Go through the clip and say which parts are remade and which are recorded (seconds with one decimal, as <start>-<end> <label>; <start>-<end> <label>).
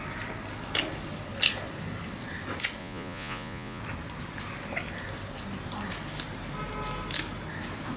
0.0-2.8 recorded; 2.8-3.8 remade; 3.8-8.0 recorded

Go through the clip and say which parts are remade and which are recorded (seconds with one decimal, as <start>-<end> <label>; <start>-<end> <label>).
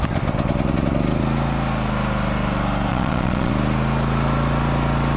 0.0-2.9 recorded; 2.9-3.5 remade; 3.5-5.2 recorded